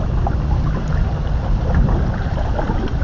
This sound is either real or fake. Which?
real